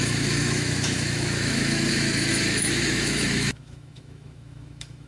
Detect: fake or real fake